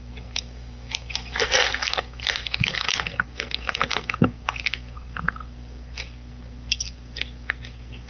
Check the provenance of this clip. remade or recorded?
remade